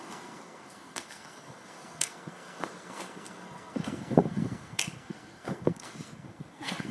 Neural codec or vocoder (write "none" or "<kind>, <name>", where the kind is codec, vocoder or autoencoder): codec, SNAC